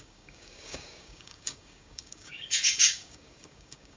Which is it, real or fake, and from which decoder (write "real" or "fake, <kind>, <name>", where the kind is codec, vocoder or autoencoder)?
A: fake, codec, DAC